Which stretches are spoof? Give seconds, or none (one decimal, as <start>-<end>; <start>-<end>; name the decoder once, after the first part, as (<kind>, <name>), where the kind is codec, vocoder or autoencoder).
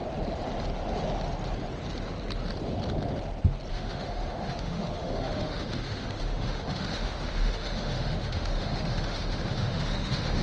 3.7-10.4 (autoencoder, DAC-VAE)